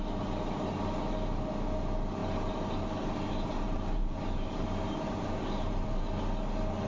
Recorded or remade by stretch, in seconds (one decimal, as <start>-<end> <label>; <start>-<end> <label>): 0.0-2.2 recorded; 2.2-6.1 remade; 6.1-6.9 recorded